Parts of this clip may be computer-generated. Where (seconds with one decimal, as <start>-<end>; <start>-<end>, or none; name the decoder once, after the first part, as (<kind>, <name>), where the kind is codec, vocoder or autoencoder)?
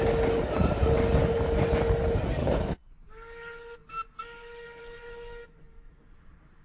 2.4-2.9 (codec, HILCodec)